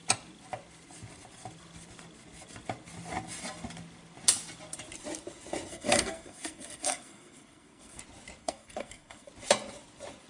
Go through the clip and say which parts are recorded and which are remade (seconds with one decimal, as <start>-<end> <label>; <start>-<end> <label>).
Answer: 0.0-5.7 recorded; 5.7-8.0 remade; 8.0-8.4 recorded; 8.4-9.3 remade; 9.3-10.3 recorded